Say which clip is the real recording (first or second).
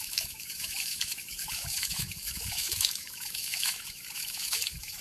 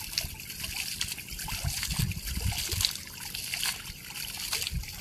second